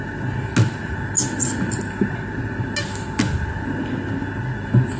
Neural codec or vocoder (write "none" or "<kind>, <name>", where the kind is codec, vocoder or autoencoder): none